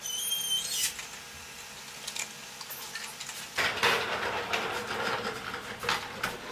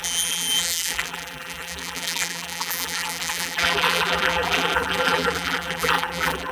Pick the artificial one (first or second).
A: second